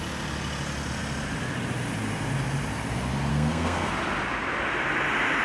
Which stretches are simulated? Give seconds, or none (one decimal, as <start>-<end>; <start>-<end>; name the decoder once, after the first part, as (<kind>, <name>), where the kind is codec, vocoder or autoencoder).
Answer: 3.3-3.9 (codec, SNAC)